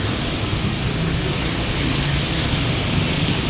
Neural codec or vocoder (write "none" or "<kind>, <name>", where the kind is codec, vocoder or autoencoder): none